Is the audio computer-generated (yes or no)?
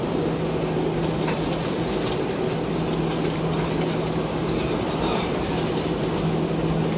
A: no